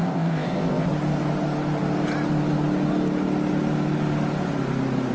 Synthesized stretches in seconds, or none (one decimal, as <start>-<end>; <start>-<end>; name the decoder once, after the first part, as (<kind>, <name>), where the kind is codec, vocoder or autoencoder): 0.0-0.9 (codec, ZipCodec)